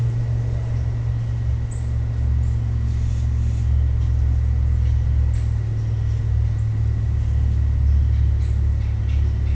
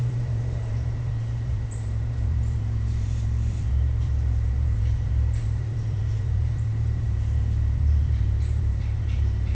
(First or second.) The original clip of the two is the first